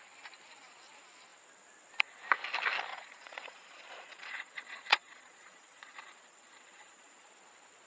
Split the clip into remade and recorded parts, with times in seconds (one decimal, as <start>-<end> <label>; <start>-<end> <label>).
0.0-2.9 recorded; 2.9-7.3 remade; 7.3-7.9 recorded